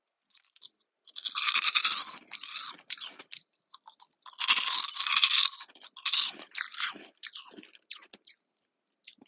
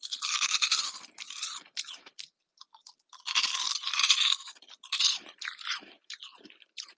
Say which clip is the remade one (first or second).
second